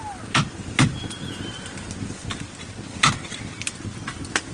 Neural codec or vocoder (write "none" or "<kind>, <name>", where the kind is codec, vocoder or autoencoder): none